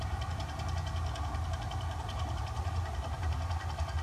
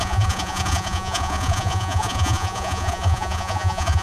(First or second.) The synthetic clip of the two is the second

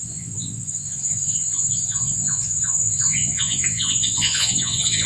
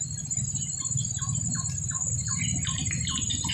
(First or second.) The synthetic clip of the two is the first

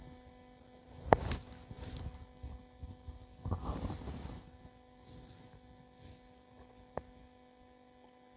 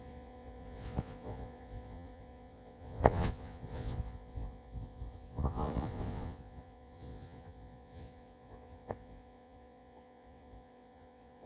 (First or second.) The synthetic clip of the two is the second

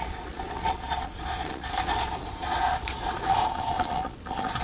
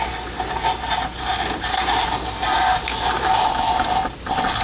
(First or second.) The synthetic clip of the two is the first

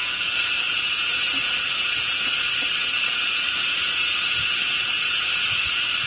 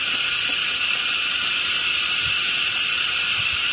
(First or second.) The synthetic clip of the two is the first